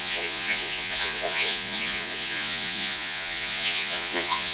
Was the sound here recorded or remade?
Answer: remade